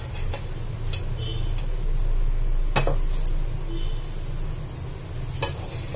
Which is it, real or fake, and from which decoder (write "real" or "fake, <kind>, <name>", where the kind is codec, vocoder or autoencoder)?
real